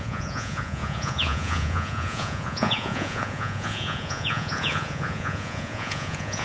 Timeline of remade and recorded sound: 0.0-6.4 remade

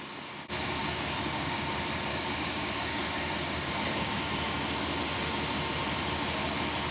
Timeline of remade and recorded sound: 0.0-0.8 recorded; 0.8-1.6 remade; 1.6-2.1 recorded; 2.1-4.6 remade; 4.6-6.9 recorded

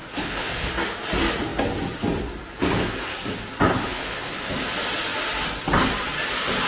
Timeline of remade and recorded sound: 0.0-0.7 remade; 0.7-3.7 recorded; 3.7-4.5 remade; 4.5-6.7 recorded

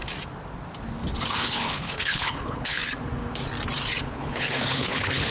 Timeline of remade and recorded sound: 0.0-1.3 recorded; 1.3-2.8 remade; 2.8-4.0 recorded; 4.0-5.3 remade

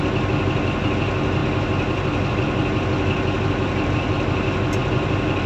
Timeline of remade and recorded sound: 0.0-5.5 recorded

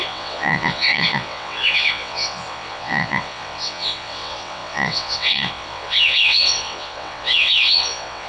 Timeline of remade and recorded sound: 0.0-8.3 remade